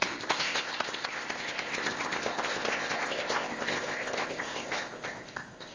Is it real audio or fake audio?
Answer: fake